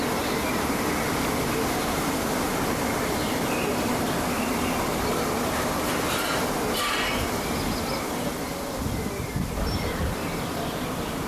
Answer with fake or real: fake